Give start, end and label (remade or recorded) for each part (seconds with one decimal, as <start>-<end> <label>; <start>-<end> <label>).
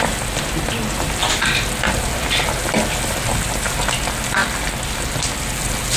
0.0-6.0 recorded